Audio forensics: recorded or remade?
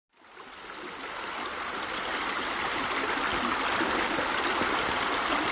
recorded